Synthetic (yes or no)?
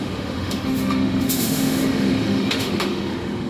yes